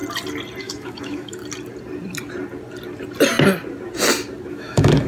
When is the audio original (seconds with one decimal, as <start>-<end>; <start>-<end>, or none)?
0.0-0.6; 1.4-4.5